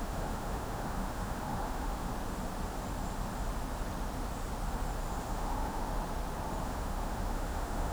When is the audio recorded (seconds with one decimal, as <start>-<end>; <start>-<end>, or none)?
2.1-5.2; 5.8-6.6